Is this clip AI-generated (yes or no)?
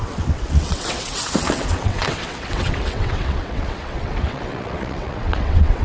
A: yes